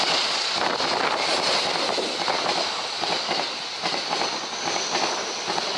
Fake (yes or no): no